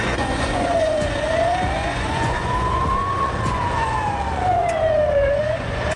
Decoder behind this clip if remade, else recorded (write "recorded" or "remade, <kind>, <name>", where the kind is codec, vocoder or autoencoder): remade, vocoder, Vocos